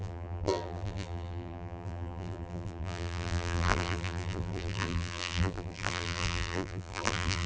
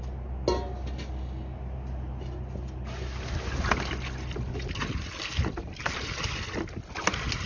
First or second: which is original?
second